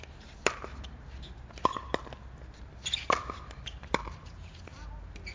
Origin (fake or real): real